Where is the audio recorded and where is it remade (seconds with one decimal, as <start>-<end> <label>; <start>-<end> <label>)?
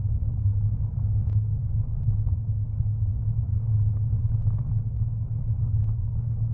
0.0-6.5 recorded